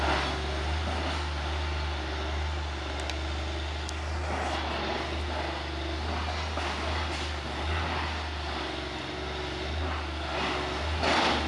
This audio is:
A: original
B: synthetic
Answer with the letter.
A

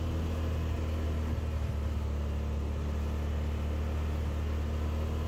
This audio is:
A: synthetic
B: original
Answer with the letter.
B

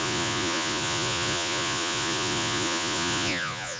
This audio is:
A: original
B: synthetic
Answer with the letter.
B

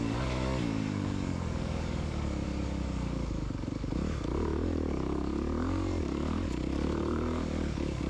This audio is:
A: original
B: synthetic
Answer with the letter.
B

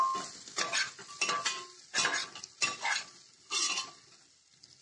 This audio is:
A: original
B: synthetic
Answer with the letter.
A